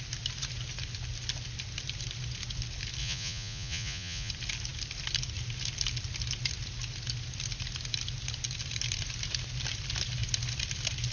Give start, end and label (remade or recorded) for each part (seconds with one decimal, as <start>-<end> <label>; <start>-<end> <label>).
0.0-3.0 recorded; 3.0-4.3 remade; 4.3-11.1 recorded